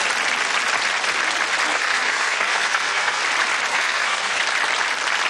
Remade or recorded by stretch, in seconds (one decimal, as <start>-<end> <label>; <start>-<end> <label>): 0.0-1.7 recorded; 1.7-3.2 remade; 3.2-3.7 recorded; 3.7-4.4 remade; 4.4-5.3 recorded